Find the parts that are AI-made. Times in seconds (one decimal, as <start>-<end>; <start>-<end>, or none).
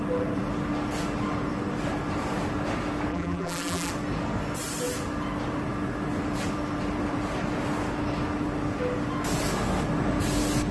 3.1-3.9